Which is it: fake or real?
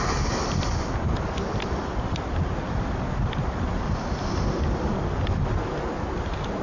real